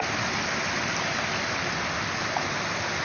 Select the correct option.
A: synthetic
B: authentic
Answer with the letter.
B